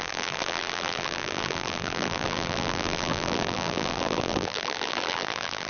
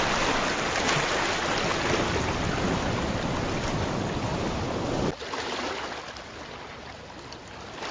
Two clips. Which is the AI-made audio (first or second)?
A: first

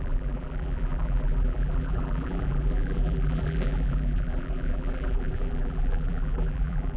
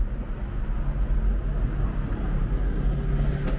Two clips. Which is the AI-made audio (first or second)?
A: first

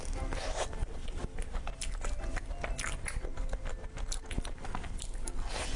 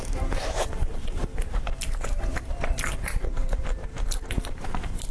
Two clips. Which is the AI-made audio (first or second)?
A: second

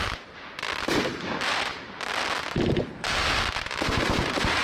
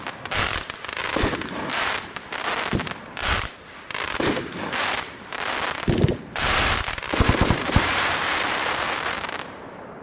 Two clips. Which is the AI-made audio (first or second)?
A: second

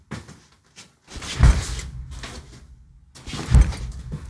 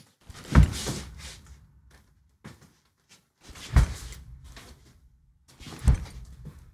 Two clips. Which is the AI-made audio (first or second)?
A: second